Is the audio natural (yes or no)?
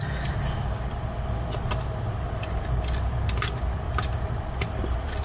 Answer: yes